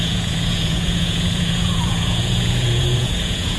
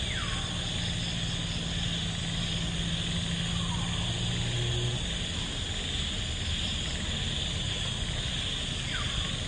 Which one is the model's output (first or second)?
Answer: first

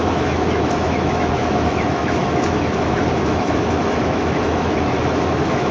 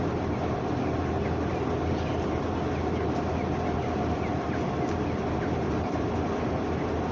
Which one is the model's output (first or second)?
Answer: first